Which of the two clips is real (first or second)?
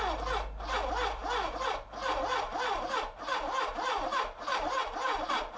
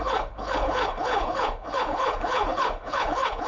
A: first